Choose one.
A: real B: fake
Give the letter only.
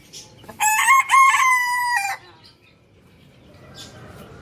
B